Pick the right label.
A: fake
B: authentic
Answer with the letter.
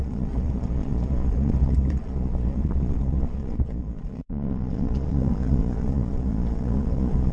A